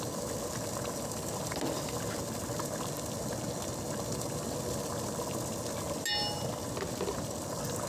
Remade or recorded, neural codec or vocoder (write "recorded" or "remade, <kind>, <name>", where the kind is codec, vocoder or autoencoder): recorded